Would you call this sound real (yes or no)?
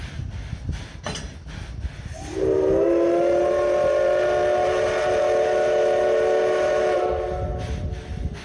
yes